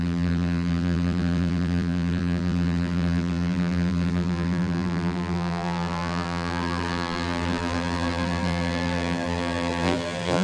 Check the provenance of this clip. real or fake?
fake